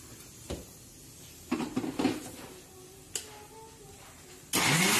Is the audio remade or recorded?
recorded